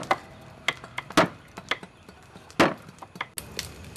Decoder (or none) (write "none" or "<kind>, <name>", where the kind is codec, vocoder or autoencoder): none